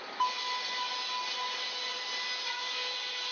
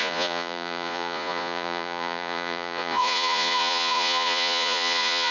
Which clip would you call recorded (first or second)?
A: first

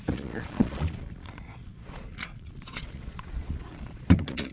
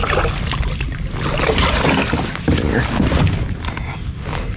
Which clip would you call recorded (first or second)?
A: second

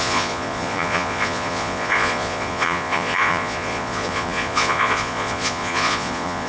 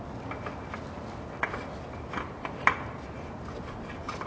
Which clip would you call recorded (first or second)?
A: second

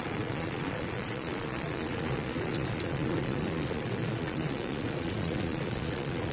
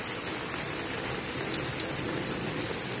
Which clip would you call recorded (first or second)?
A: second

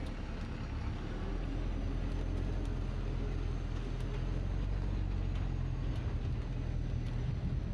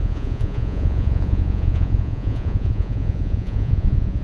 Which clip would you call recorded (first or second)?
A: first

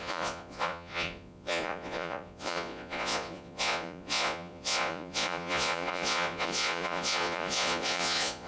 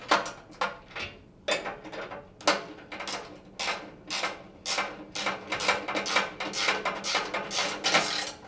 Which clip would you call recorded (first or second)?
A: second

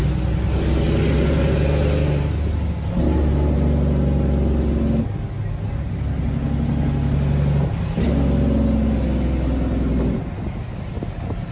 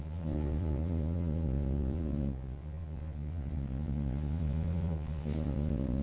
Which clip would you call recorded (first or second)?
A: first